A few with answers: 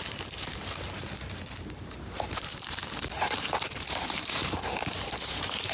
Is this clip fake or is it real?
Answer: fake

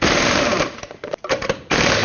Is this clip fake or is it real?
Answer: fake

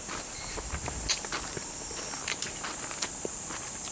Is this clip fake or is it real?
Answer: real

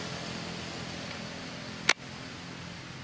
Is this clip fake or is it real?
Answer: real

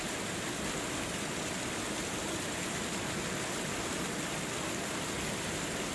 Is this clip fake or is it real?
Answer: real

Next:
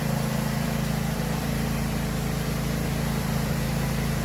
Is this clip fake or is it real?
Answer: fake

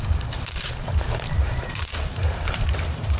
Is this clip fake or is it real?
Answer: fake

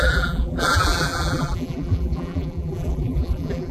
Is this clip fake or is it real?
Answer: fake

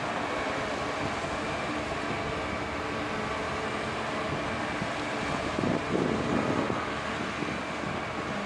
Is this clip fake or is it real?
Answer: real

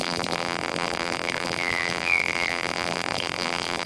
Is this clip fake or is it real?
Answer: fake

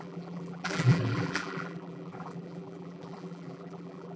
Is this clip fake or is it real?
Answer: fake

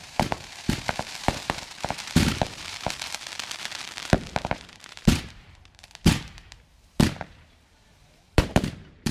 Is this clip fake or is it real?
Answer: fake